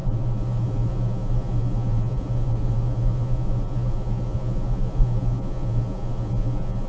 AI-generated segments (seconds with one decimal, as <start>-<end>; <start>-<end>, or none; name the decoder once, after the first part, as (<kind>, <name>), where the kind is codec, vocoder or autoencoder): 0.0-6.9 (vocoder, Vocos)